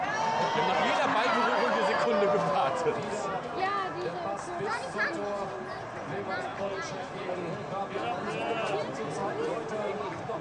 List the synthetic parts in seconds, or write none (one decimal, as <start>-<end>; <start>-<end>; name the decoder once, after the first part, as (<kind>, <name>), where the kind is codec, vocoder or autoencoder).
9.2-10.4 (vocoder, BigVGAN v2)